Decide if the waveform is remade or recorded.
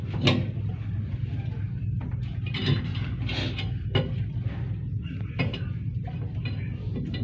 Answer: recorded